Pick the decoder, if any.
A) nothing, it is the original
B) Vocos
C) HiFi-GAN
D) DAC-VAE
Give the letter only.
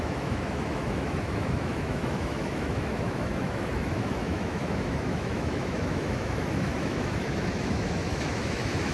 D